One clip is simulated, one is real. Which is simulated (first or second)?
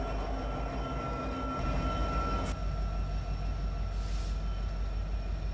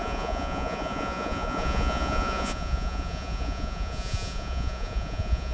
second